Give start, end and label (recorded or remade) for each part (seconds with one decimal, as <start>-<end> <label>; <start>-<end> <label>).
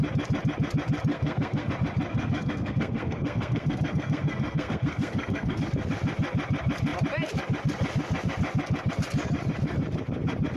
0.0-1.1 recorded; 1.1-1.7 remade; 1.7-2.1 recorded; 2.1-5.6 remade; 5.6-10.6 recorded